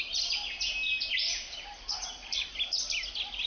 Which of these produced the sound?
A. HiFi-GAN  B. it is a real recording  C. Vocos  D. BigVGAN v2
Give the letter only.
B